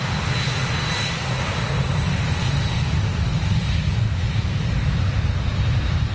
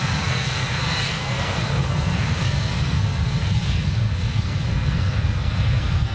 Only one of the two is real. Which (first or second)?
first